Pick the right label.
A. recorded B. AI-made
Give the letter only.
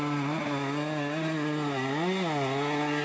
A